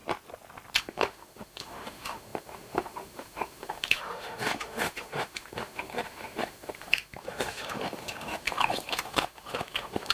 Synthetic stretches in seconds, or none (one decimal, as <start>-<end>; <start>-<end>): 0.8-10.1